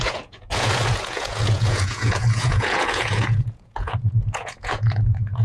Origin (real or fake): fake